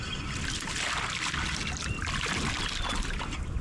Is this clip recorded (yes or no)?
yes